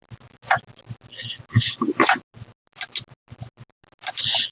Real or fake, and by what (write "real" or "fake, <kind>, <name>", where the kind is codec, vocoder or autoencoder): real